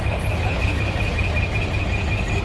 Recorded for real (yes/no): yes